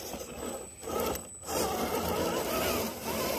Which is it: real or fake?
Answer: real